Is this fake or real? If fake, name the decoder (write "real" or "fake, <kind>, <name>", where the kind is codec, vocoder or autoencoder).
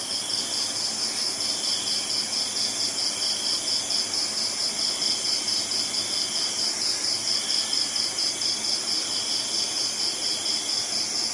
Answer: real